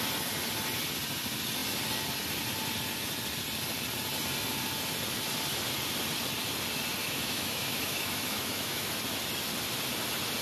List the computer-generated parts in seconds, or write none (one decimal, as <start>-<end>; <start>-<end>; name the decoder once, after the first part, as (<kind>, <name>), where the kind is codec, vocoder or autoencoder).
7.0-8.9 (autoencoder, DAC-VAE)